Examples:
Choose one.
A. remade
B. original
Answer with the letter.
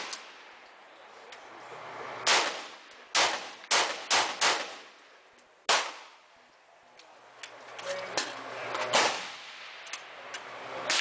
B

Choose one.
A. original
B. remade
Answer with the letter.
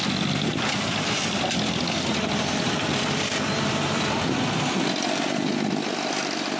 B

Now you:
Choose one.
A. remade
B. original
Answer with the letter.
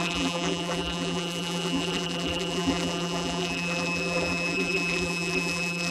A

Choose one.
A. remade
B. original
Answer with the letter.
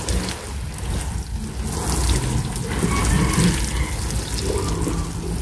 B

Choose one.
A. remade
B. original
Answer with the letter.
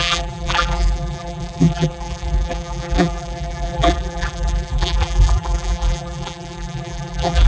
A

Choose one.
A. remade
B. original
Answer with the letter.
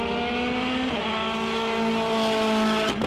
B